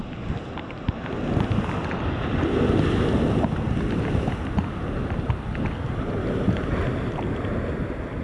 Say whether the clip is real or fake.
real